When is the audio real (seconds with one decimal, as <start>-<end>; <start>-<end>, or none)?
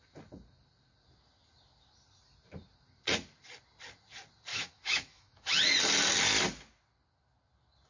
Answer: 0.0-4.5; 5.6-7.9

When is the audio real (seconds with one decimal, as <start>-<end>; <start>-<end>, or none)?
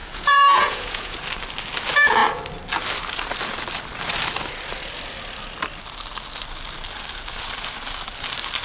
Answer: 1.2-8.6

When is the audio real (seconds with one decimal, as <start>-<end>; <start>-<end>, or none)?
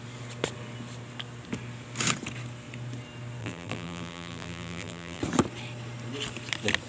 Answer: 0.0-3.4; 5.2-6.9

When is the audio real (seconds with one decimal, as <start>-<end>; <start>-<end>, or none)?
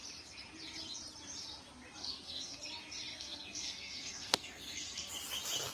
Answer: 0.0-2.0; 2.6-3.1; 5.1-5.7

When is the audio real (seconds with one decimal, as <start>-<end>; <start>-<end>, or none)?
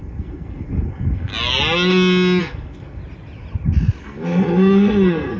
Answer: 1.3-2.4; 3.0-4.0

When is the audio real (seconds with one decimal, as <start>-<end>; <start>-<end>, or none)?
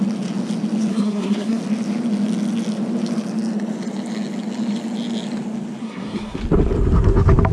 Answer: 0.0-0.9; 1.6-5.8; 6.4-7.5